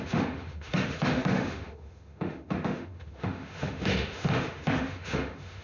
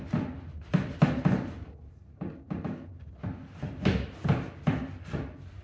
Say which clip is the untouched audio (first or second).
second